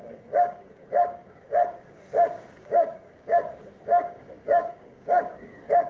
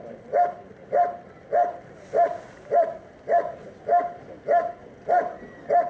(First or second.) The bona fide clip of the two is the second